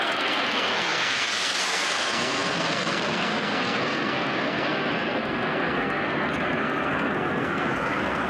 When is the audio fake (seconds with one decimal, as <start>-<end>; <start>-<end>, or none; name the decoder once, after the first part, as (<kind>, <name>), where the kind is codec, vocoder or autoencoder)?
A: 0.0-8.3 (codec, SNAC)